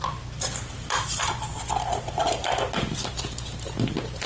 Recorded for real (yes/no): yes